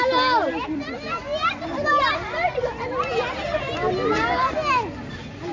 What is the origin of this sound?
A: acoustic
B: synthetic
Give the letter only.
A